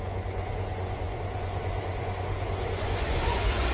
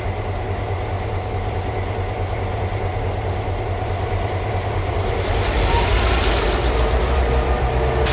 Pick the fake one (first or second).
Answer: first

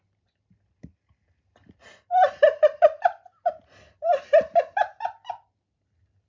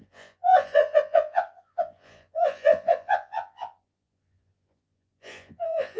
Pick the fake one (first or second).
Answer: second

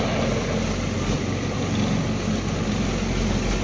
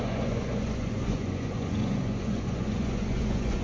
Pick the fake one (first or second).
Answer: second